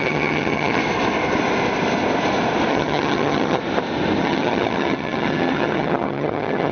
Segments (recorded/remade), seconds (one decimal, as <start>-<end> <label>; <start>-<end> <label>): 0.0-0.8 remade; 0.8-2.7 recorded; 2.7-3.6 remade; 3.6-4.2 recorded; 4.2-6.7 remade